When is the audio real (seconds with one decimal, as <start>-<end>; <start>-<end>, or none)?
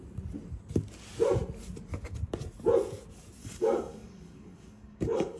0.0-3.4